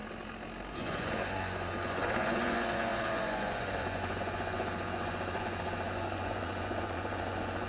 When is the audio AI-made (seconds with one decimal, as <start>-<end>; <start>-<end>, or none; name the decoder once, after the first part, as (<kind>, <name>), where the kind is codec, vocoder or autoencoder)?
0.7-7.7 (vocoder, Vocos)